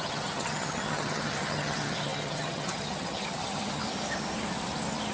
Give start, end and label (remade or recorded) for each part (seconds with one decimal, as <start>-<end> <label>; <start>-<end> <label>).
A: 0.0-3.8 remade; 3.8-5.1 recorded